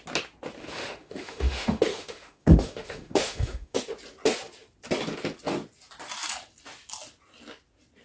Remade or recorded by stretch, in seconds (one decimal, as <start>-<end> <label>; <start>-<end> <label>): 0.0-0.6 recorded; 0.6-3.8 remade; 3.8-8.0 recorded